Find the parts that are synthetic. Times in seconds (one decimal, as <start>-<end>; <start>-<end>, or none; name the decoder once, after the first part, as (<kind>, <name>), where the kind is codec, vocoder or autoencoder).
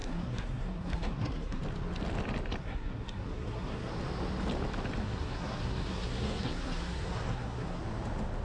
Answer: 0.0-1.6 (codec, SNAC); 2.6-3.9; 5.0-7.8